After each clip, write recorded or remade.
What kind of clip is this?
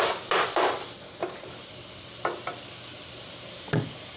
recorded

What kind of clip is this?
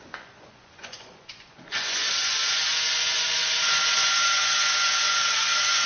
remade